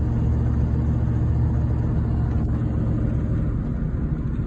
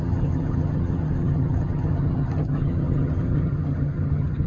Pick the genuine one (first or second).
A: first